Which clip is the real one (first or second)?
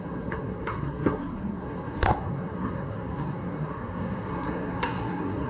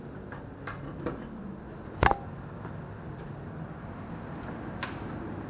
second